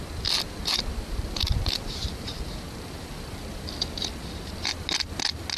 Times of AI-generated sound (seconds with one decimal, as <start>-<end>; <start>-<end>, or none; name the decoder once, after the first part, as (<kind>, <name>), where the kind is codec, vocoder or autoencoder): 0.9-3.7 (vocoder, BigVGAN v2)